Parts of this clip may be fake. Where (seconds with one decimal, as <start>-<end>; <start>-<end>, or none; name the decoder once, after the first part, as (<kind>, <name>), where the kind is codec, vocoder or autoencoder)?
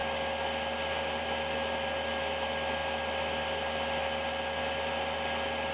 none